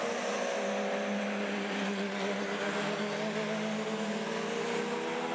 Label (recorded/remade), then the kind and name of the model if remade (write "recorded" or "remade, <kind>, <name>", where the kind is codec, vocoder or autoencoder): recorded